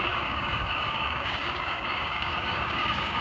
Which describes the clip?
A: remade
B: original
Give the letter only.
A